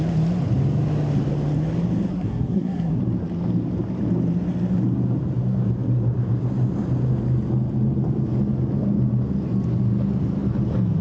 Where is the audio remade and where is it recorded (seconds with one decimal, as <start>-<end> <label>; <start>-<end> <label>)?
0.0-2.1 recorded; 2.1-3.0 remade; 3.0-11.0 recorded